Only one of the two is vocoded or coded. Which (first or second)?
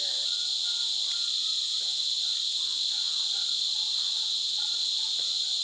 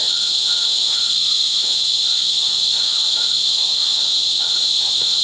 second